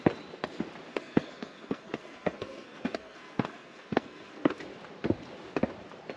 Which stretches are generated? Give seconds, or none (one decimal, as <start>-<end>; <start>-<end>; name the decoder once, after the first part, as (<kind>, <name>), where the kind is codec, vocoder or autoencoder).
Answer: 0.9-4.6 (codec, SNAC)